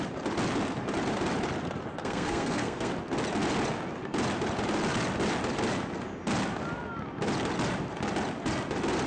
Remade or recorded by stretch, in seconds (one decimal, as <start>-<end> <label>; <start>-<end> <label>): 0.0-2.0 recorded; 2.0-2.9 remade; 2.9-9.1 recorded